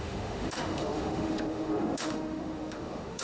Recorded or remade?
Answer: remade